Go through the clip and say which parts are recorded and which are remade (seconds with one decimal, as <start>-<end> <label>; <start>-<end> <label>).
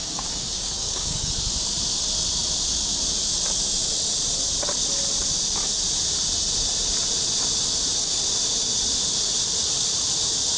0.0-1.3 remade; 1.3-10.6 recorded